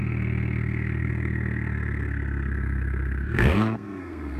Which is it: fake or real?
fake